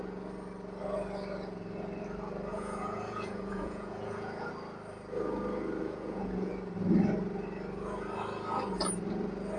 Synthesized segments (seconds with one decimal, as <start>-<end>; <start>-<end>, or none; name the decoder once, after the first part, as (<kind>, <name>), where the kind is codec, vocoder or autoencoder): 2.5-4.5 (vocoder, Vocos); 5.8-6.5